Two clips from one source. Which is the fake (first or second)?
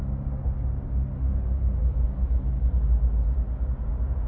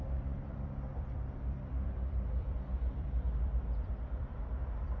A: second